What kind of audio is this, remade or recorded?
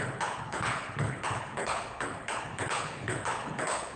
remade